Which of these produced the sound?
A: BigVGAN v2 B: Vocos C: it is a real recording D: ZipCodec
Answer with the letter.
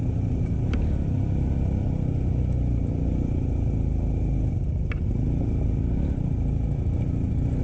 C